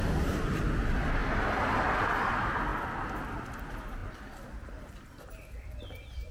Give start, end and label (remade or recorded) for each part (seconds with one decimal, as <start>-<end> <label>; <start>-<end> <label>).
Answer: 0.0-6.3 recorded